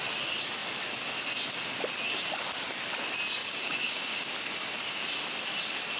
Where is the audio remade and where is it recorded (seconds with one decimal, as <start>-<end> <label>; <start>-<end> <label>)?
0.0-3.4 recorded; 3.4-4.3 remade; 4.3-6.0 recorded

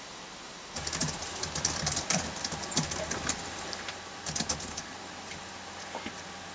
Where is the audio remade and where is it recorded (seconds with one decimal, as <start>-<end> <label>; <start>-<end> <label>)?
0.0-6.5 recorded

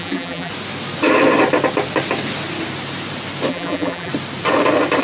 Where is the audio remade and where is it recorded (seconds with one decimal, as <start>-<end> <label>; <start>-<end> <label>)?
0.0-0.5 remade; 0.5-3.5 recorded; 3.5-4.1 remade; 4.1-5.0 recorded

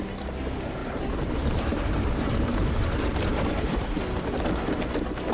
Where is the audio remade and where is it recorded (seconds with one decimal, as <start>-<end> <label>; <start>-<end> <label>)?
0.0-0.8 recorded; 0.8-4.0 remade; 4.0-5.3 recorded

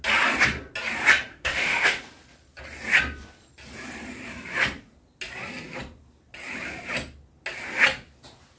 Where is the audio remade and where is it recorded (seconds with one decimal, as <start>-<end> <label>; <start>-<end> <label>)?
0.0-1.3 recorded; 1.3-2.0 remade; 2.0-8.6 recorded

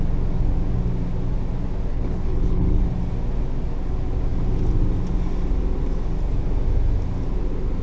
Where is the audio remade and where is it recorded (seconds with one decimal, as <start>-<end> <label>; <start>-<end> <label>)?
0.0-1.9 recorded; 1.9-2.8 remade; 2.8-7.8 recorded

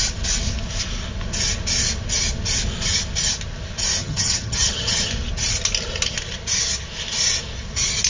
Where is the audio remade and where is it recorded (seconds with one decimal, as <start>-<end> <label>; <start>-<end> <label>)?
0.0-4.0 recorded; 4.0-5.1 remade; 5.1-8.1 recorded

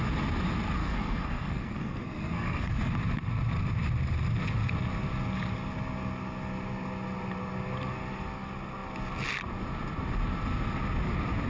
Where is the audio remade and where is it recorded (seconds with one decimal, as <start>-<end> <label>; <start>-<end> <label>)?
0.0-0.8 recorded; 0.8-2.9 remade; 2.9-11.5 recorded